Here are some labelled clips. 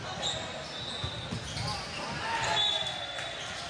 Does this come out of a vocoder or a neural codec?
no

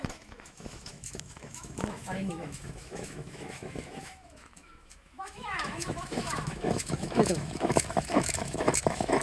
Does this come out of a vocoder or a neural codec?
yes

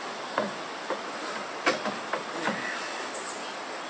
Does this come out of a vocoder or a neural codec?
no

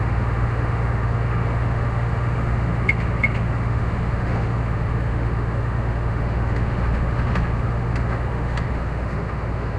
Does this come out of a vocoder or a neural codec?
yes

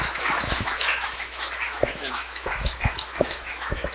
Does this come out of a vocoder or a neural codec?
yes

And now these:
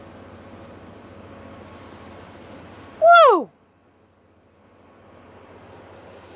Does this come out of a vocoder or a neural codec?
no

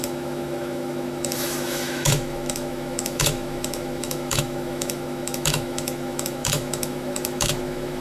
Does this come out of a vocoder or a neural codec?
yes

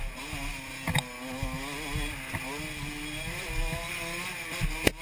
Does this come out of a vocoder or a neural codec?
no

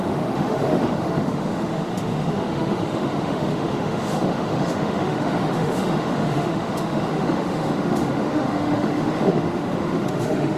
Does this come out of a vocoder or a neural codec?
yes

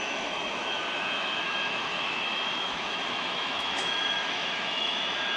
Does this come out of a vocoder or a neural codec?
yes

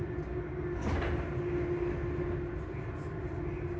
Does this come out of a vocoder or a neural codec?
no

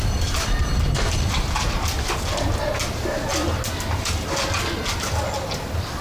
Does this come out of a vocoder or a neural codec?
no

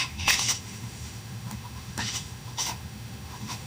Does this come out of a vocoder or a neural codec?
yes